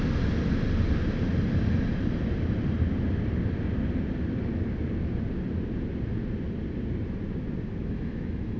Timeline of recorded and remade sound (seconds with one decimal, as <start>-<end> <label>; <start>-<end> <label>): 0.0-7.8 recorded; 7.8-8.6 remade